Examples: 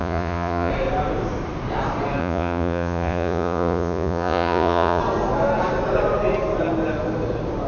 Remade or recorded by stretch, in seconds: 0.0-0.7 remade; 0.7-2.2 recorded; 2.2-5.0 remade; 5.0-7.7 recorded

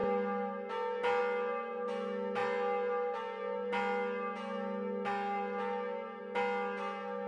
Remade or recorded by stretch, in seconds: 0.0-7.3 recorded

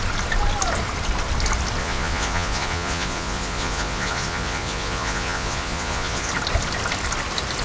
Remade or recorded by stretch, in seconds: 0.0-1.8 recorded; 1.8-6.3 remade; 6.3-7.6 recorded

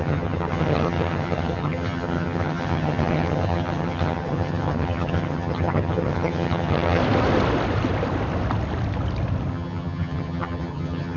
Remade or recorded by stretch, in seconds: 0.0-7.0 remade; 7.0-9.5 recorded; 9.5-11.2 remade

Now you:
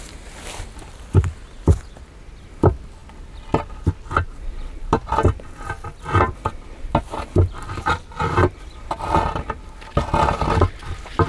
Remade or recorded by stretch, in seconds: 0.0-11.3 recorded

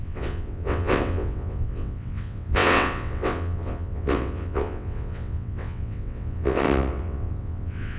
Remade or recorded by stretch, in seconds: 0.0-8.0 remade